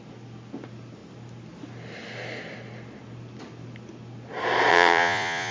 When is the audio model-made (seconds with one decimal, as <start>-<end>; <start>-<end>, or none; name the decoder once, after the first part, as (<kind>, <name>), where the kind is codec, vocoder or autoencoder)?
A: 4.7-5.5 (vocoder, Vocos)